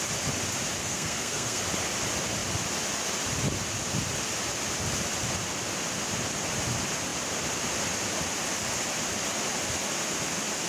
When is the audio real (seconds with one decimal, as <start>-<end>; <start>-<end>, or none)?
0.0-0.8; 1.6-10.7